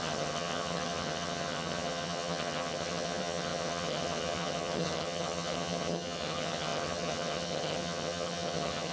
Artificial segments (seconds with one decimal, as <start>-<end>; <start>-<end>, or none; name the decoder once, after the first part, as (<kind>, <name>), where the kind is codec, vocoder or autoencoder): 0.0-8.9 (vocoder, HiFi-GAN)